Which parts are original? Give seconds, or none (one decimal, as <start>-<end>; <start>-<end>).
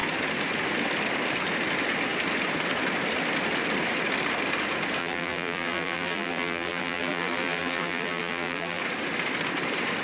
0.0-5.0; 8.8-10.0